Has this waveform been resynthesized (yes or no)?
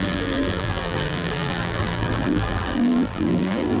yes